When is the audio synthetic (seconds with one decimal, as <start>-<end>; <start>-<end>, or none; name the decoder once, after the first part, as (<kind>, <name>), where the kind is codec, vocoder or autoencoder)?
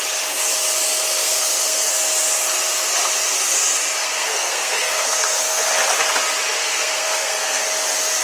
1.2-1.9 (codec, SNAC); 4.0-5.6; 6.6-7.6